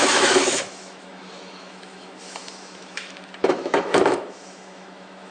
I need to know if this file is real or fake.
fake